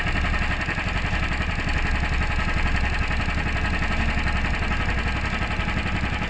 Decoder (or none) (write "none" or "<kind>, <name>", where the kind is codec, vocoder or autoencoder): none